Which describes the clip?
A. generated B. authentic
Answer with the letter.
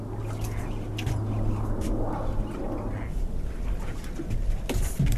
B